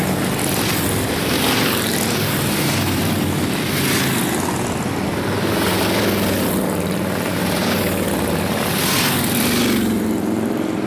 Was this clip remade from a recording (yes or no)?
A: no